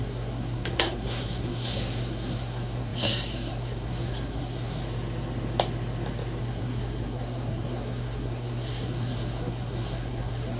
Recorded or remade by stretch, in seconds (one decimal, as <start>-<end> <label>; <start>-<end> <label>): 0.0-4.8 remade; 4.8-6.4 recorded; 6.4-10.6 remade